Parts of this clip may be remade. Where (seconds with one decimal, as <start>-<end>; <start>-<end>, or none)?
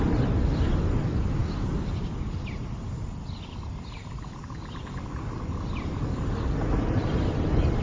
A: none